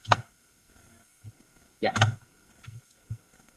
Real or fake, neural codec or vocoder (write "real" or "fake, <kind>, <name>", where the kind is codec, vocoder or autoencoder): fake, codec, SNAC